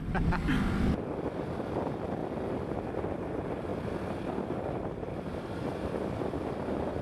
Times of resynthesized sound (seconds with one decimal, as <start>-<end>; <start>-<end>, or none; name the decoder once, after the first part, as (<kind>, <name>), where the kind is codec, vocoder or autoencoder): 0.0-2.2 (vocoder, BigVGAN v2); 3.2-3.7; 4.3-7.0

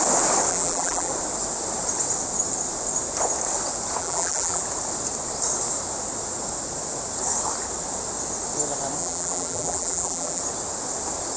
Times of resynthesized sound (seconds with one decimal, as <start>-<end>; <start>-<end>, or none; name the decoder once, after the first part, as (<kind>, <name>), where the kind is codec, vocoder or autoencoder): 0.5-1.1 (vocoder, BigVGAN v2); 4.0-4.6; 9.0-10.4

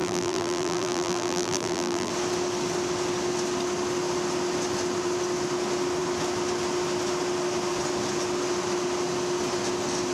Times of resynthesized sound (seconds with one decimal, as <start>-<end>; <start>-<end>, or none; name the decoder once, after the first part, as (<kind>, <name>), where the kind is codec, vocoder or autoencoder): 0.0-2.1 (vocoder, BigVGAN v2)

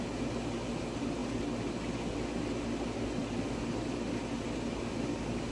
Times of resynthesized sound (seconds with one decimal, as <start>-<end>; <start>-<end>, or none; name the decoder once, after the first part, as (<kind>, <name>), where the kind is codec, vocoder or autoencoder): none

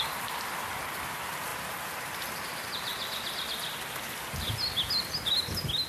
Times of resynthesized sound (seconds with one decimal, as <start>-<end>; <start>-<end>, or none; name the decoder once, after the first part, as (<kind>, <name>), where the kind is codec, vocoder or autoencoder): 0.0-2.9 (vocoder, BigVGAN v2)